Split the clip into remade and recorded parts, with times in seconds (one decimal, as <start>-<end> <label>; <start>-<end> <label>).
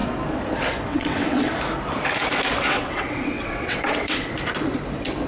0.0-0.9 recorded; 0.9-1.5 remade; 1.5-2.7 recorded; 2.7-4.3 remade; 4.3-5.3 recorded